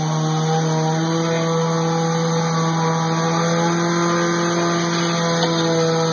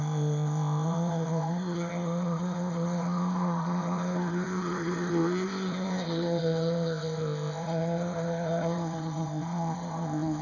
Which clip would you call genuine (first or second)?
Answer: first